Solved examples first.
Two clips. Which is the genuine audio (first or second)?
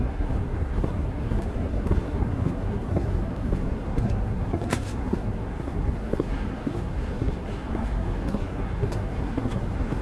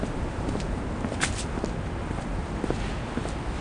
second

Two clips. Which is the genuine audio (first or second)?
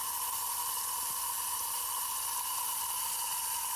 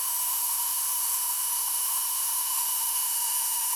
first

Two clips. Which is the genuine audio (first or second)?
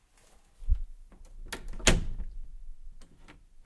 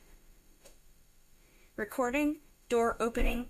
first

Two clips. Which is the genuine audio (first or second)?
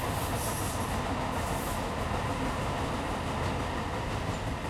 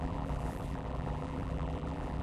first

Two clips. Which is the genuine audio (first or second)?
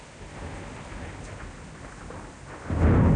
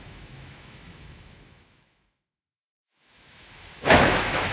first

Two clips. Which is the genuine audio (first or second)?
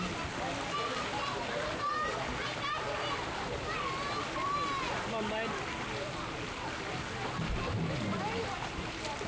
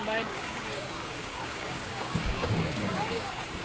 first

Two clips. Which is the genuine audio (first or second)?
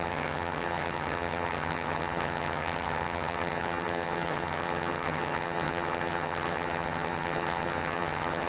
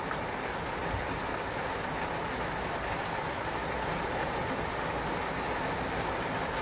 second